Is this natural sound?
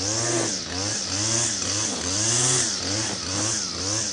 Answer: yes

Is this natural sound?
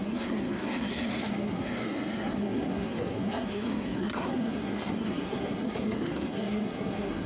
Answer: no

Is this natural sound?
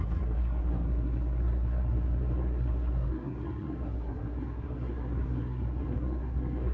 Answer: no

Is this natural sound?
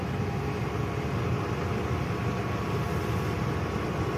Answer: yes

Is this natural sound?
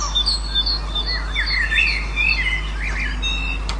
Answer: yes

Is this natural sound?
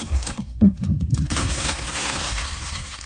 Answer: no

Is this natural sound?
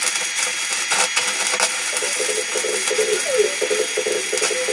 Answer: yes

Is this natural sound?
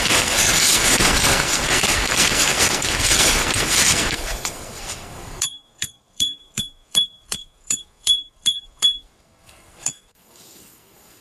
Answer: no